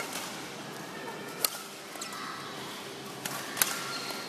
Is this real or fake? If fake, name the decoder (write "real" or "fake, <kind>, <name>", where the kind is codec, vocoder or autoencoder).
real